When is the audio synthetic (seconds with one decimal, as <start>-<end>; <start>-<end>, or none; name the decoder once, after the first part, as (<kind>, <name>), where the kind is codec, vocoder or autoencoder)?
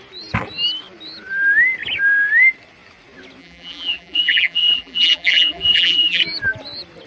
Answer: 3.4-6.2 (vocoder, BigVGAN v2)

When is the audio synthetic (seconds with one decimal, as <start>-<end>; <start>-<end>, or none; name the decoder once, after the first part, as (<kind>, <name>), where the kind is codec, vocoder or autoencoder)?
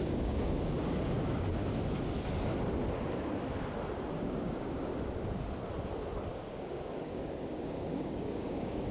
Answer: 0.0-1.6 (codec, DAC); 4.1-4.9; 6.3-8.9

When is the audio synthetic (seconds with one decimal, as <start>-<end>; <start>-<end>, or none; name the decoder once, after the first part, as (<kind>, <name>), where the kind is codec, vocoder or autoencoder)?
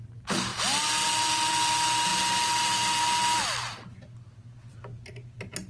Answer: none